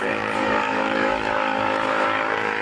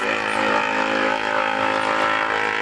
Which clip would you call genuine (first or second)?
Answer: second